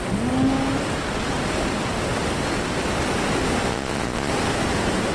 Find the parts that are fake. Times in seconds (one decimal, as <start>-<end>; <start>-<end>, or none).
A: 3.7-4.3